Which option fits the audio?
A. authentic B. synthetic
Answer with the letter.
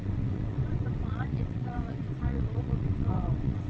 B